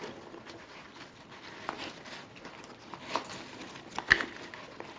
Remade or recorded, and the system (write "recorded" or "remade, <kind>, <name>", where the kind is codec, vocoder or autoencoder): recorded